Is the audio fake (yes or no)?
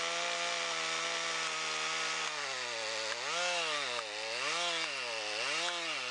no